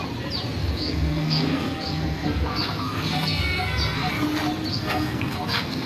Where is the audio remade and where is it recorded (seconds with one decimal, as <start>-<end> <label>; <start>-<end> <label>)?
0.0-0.6 recorded; 0.6-4.1 remade; 4.1-4.7 recorded; 4.7-5.9 remade